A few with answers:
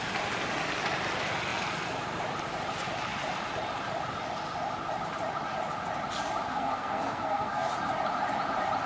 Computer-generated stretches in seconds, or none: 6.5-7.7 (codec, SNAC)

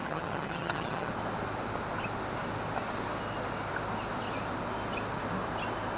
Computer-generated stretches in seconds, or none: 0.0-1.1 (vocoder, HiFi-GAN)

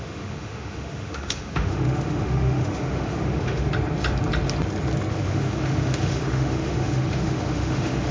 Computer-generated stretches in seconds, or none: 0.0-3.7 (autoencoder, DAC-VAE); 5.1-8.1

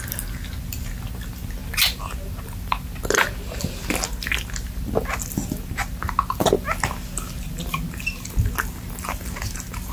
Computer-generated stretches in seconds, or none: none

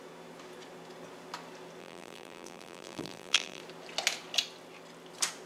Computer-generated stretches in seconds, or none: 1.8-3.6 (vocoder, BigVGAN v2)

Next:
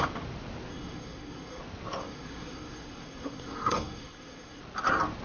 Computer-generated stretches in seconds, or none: 0.7-1.6 (codec, SNAC); 2.0-4.6

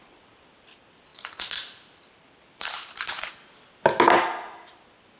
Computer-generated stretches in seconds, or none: 1.1-3.3 (vocoder, BigVGAN v2)

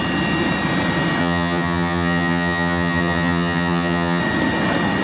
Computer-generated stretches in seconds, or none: 1.2-4.2 (vocoder, HiFi-GAN)